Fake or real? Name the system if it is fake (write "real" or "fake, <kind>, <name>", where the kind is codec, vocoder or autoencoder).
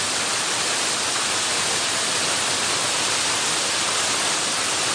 real